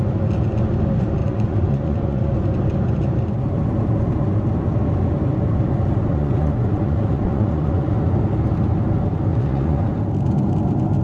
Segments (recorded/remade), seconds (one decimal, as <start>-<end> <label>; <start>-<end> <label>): 0.0-1.2 recorded; 1.2-2.3 remade; 2.3-6.1 recorded; 6.1-8.2 remade; 8.2-9.3 recorded; 9.3-9.8 remade; 9.8-11.0 recorded

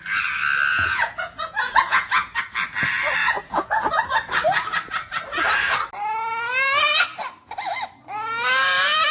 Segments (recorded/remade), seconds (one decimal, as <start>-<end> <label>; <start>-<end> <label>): 0.0-0.7 recorded; 0.7-2.4 remade; 2.4-3.2 recorded; 3.2-4.0 remade; 4.0-9.1 recorded

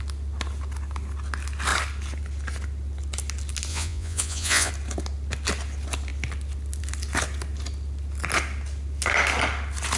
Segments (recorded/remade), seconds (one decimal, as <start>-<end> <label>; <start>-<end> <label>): 0.0-3.7 recorded; 3.7-4.7 remade; 4.7-10.0 recorded

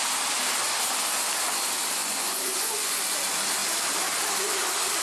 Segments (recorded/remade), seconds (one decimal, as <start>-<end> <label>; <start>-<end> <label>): 0.0-2.0 recorded; 2.0-3.0 remade; 3.0-5.0 recorded

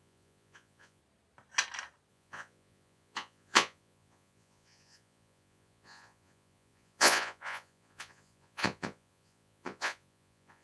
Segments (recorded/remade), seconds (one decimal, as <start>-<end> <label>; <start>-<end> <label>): 0.0-1.0 remade; 1.0-2.1 recorded; 2.1-10.6 remade

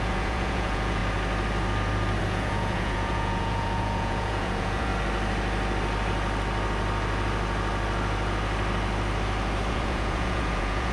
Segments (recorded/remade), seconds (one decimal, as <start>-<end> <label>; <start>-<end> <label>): 0.0-1.0 remade; 1.0-2.2 recorded; 2.2-4.9 remade; 4.9-9.7 recorded; 9.7-10.9 remade